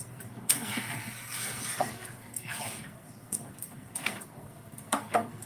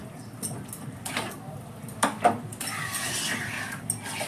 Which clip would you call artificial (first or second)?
first